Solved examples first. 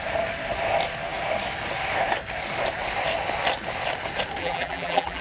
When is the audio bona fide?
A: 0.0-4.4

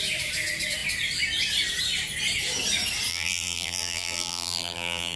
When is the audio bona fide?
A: 0.0-3.1

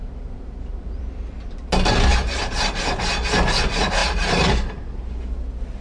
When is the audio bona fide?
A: 1.0-2.1; 2.9-4.0; 4.8-5.8

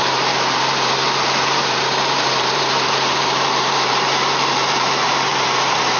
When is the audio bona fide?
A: none

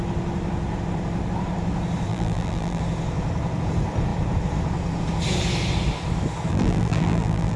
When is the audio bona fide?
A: 0.0-2.1; 2.8-6.5

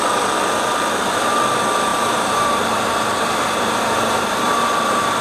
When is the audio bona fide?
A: 0.0-1.9

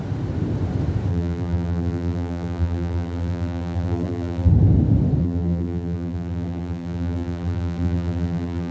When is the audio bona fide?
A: 0.0-1.1; 4.5-5.2